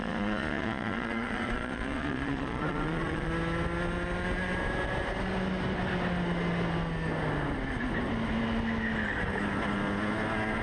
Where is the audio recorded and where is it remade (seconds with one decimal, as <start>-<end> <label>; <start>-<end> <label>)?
0.0-3.3 remade; 3.3-10.6 recorded

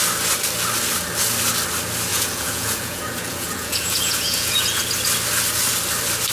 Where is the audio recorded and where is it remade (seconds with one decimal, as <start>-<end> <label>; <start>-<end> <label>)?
0.0-2.1 recorded; 2.1-4.8 remade; 4.8-6.3 recorded

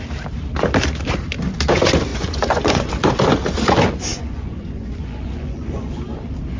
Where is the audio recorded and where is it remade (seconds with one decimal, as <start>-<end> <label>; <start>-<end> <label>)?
0.0-2.1 recorded; 2.1-2.9 remade; 2.9-4.1 recorded; 4.1-6.0 remade; 6.0-6.6 recorded